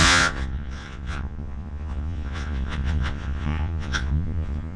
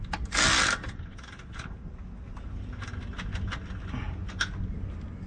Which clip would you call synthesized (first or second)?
first